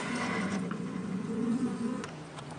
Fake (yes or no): yes